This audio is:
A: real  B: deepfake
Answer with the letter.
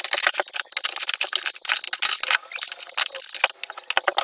A